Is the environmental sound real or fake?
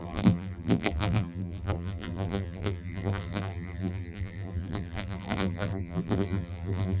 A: fake